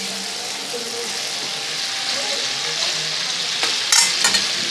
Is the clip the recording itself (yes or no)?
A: yes